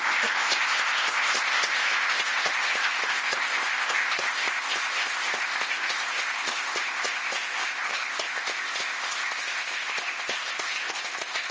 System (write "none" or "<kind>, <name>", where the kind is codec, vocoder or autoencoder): codec, ZipCodec